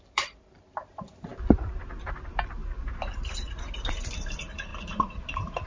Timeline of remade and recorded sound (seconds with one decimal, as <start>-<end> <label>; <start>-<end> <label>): 0.0-1.3 remade; 1.3-2.1 recorded; 2.1-2.6 remade; 2.6-4.0 recorded; 4.0-5.7 remade